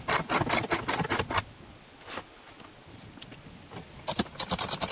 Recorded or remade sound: recorded